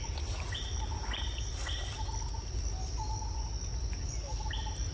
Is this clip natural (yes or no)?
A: yes